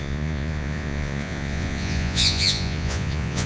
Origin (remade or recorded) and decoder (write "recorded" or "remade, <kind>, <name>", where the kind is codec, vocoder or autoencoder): remade, vocoder, Vocos